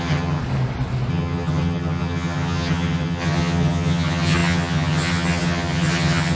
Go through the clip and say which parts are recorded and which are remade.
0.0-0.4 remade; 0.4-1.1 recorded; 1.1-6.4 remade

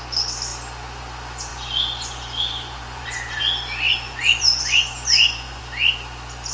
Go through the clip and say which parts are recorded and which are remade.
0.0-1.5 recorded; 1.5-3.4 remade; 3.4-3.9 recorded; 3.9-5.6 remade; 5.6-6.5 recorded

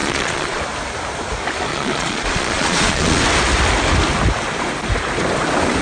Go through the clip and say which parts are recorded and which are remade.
0.0-0.6 remade; 0.6-1.7 recorded; 1.7-3.2 remade; 3.2-5.8 recorded